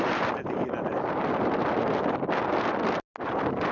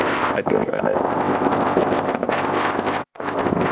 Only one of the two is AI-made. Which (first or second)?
second